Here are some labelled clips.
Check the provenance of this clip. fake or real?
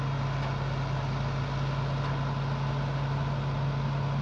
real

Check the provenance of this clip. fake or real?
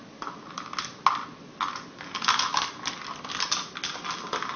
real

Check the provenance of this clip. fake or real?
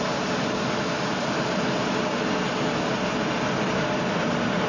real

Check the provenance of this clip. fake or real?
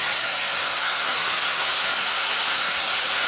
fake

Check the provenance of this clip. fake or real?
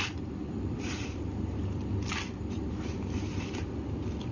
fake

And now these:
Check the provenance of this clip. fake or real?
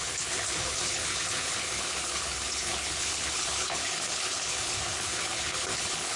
fake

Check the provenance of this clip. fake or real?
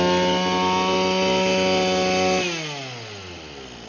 real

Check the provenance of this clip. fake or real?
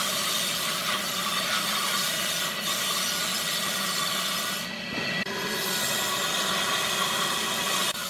real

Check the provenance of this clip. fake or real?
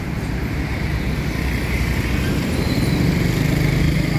real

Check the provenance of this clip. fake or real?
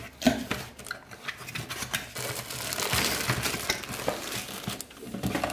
real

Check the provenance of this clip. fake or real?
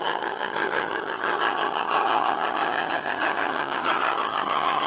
fake